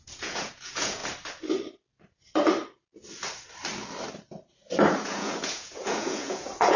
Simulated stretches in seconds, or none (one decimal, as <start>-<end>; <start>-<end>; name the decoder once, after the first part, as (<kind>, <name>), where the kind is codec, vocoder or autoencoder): 0.0-1.0 (vocoder, Vocos); 4.9-6.8

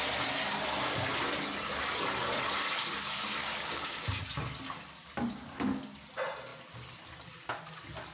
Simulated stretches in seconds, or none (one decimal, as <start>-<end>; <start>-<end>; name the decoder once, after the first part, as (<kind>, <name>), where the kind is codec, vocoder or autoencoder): 3.4-4.2 (codec, DAC)

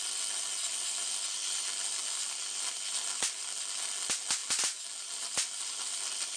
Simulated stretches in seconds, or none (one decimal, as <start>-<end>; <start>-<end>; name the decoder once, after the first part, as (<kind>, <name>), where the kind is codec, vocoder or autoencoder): none

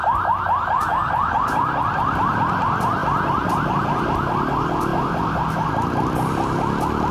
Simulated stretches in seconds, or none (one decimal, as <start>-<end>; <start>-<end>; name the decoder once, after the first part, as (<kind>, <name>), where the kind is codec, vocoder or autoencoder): 1.0-2.1 (vocoder, BigVGAN v2)

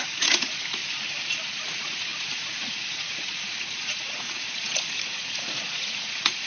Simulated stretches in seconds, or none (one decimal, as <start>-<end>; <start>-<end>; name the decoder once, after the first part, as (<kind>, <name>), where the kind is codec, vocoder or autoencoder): 0.0-0.8 (vocoder, Vocos); 1.5-6.5

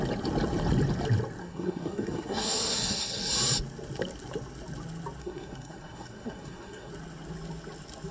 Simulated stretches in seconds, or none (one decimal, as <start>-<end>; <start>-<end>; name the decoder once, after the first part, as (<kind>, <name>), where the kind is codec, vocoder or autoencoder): 1.4-3.2 (codec, SNAC); 5.2-6.9